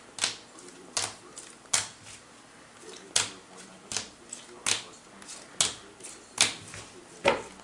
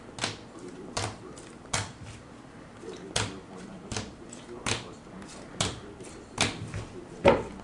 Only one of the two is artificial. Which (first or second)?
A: second